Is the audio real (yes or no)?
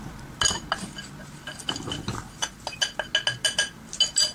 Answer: yes